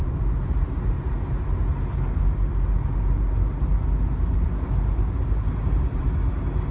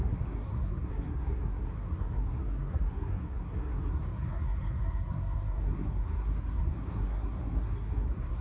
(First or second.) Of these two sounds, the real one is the first